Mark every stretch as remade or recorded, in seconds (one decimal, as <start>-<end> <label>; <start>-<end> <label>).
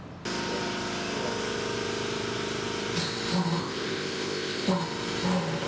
0.0-3.6 recorded; 3.6-4.7 remade; 4.7-5.7 recorded